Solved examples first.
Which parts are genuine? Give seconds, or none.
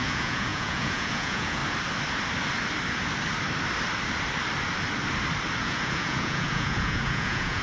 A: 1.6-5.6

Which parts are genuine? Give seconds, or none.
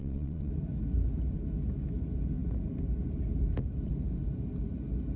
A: 0.5-5.2